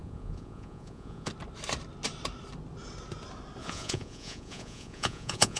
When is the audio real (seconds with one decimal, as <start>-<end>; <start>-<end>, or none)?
1.3-3.6